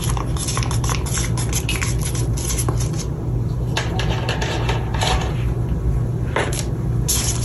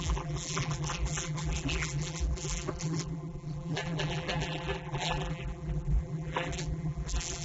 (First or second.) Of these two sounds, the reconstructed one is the second